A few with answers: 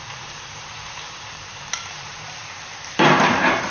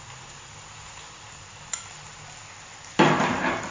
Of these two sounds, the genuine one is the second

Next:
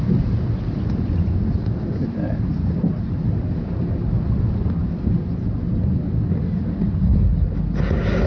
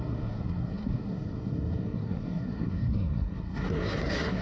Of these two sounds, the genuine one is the first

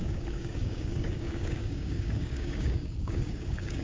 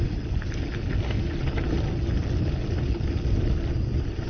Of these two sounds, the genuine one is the second